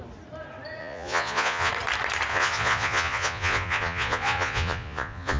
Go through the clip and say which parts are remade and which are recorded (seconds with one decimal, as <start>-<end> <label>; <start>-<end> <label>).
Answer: 0.0-0.8 recorded; 0.8-1.7 remade; 1.7-2.3 recorded; 2.3-5.4 remade